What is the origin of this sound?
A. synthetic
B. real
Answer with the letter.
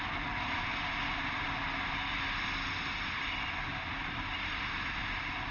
B